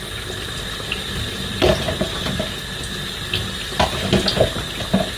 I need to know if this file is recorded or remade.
recorded